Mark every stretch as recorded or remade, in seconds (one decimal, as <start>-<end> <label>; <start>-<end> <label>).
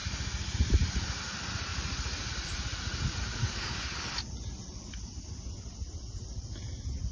0.0-3.4 recorded; 3.4-4.1 remade; 4.1-7.1 recorded